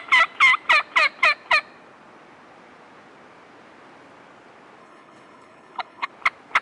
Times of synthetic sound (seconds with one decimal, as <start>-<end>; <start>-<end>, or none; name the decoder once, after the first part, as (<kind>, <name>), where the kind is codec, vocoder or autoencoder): 4.8-6.1 (codec, HILCodec)